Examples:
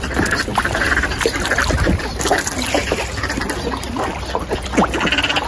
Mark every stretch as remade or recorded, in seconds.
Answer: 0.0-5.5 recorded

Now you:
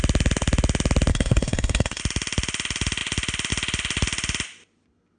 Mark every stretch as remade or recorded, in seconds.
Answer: 0.0-1.1 recorded; 1.1-2.0 remade; 2.0-5.2 recorded

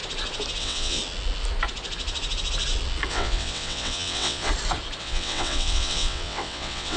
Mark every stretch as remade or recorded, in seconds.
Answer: 0.0-0.6 recorded; 0.6-1.0 remade; 1.0-3.1 recorded; 3.1-4.5 remade; 4.5-5.0 recorded; 5.0-7.0 remade